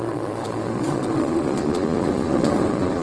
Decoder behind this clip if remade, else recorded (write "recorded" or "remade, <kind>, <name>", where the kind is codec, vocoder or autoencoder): remade, vocoder, Vocos